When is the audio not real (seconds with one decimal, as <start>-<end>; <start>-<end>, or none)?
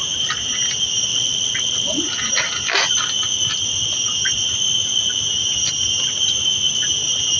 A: 1.1-2.0